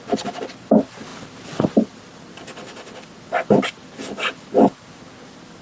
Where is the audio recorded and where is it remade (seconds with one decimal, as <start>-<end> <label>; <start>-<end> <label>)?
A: 0.0-1.1 recorded; 1.1-4.5 remade; 4.5-5.6 recorded